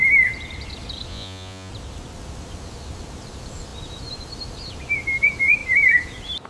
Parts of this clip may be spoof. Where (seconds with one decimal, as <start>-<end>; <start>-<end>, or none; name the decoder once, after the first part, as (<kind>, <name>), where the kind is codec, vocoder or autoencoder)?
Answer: 1.1-1.7 (vocoder, Vocos)